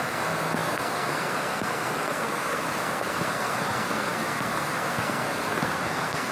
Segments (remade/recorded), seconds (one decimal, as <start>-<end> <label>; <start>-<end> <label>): 0.0-6.3 remade